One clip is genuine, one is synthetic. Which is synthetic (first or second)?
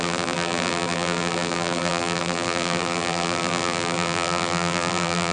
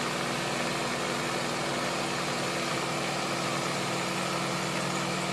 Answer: first